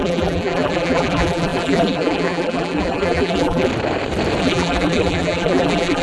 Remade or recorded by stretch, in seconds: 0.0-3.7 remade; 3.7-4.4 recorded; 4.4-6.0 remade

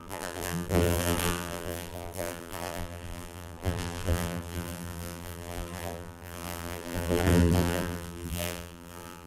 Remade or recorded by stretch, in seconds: 0.0-9.3 remade

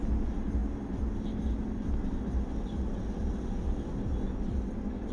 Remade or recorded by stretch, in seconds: 0.0-5.1 recorded

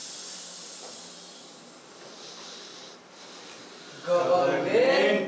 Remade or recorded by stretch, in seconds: 0.0-1.9 remade; 1.9-5.3 recorded

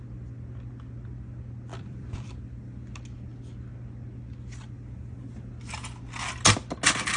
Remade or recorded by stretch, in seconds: 0.0-1.7 recorded; 1.7-2.3 remade; 2.3-7.2 recorded